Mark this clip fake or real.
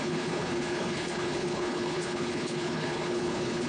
fake